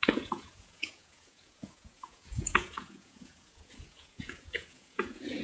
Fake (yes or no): yes